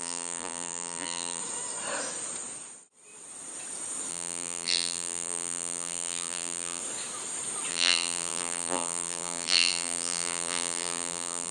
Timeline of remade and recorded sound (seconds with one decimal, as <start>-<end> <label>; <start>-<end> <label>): 0.0-1.4 remade; 1.4-4.1 recorded; 4.1-6.8 remade; 6.8-7.7 recorded; 7.7-11.5 remade